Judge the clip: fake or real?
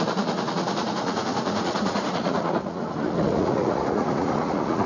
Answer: fake